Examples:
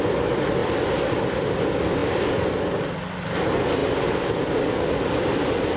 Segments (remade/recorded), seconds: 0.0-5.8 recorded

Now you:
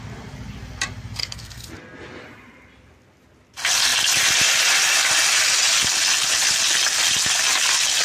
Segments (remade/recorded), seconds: 0.0-1.2 recorded; 1.2-1.7 remade; 1.7-8.0 recorded